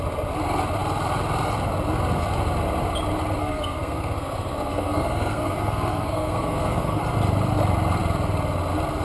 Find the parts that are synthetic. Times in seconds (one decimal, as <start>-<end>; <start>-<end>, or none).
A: 3.4-7.0